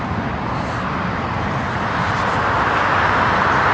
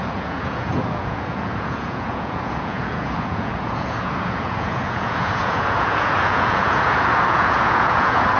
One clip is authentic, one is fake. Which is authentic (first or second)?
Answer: first